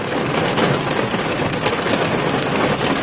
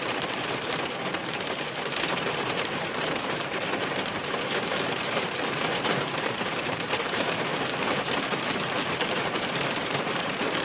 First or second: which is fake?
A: second